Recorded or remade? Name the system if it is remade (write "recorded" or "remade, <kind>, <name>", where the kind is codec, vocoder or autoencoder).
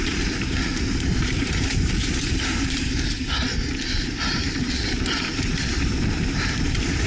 remade, vocoder, BigVGAN v2